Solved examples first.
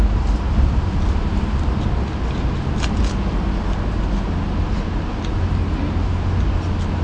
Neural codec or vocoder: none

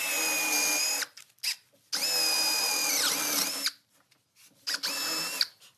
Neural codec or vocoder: none